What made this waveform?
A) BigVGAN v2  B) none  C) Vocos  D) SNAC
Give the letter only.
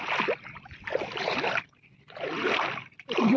A